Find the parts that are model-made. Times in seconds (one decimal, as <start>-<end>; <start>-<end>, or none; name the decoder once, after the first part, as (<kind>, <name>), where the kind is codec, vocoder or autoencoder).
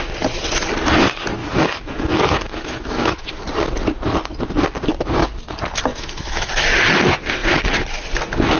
1.4-3.4 (autoencoder, DAC-VAE); 5.9-6.5